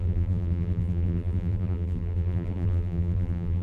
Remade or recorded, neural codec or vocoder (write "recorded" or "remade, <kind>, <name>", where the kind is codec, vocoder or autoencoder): remade, vocoder, BigVGAN v2